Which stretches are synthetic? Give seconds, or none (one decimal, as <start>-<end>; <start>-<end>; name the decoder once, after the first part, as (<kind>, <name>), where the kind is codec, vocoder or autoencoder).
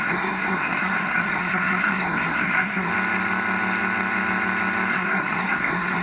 0.0-2.9 (codec, SNAC); 4.9-6.0